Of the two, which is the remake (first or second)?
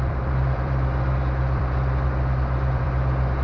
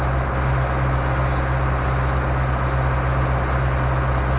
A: first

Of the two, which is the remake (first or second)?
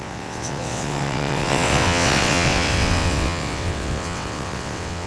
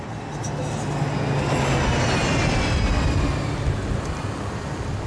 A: first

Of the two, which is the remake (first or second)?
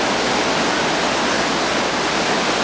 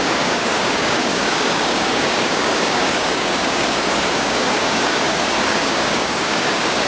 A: second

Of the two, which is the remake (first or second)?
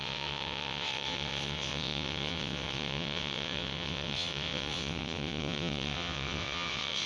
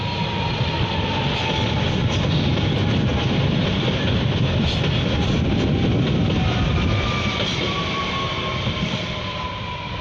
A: first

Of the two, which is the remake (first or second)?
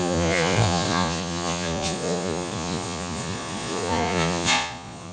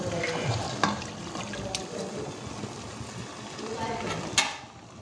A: first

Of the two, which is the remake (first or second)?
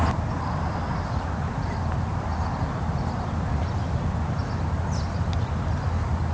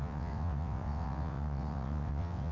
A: second